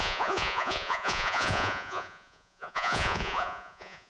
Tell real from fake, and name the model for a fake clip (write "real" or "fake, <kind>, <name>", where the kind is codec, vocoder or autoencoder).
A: fake, vocoder, Vocos